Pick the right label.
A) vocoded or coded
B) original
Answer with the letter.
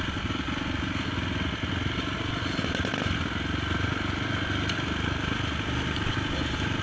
B